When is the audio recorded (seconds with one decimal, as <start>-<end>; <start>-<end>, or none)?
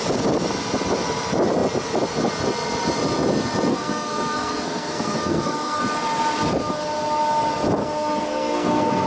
0.0-3.7; 5.8-7.8